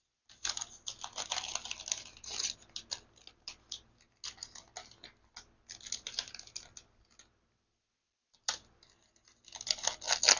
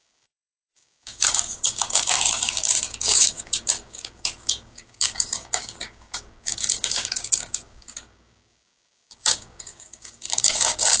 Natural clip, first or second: first